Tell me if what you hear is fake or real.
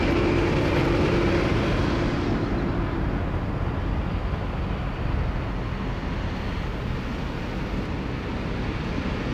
real